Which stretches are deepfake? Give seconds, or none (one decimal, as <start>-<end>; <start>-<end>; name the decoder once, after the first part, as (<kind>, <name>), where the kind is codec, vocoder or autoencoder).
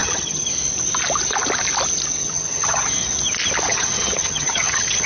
0.0-0.5 (vocoder, HiFi-GAN); 2.2-2.8; 3.7-5.1